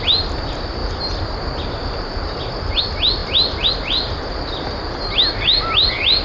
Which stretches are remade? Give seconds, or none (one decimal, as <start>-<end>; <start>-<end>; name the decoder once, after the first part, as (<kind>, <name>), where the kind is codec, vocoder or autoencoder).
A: none